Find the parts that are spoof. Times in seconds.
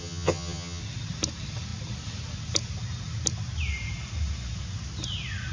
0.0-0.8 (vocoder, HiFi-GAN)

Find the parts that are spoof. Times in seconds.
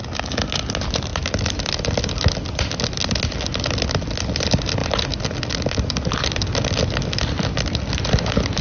none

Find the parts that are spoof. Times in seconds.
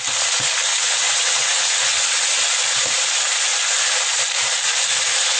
0.7-2.4 (vocoder, WaveNeXt)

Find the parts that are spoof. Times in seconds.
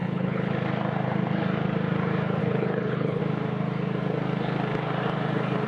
0.0-0.5 (codec, HILCodec); 2.4-3.2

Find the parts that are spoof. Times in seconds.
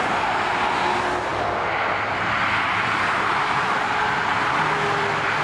none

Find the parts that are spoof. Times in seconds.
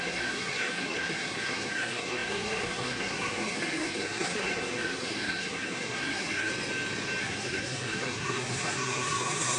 0.0-6.5 (codec, SNAC); 7.2-9.6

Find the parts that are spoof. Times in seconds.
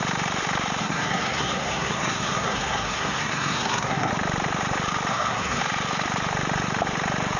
0.8-4.1 (codec, SNAC); 5.1-5.6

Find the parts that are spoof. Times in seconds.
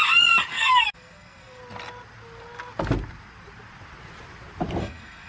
0.5-1.6 (codec, SNAC); 4.8-5.3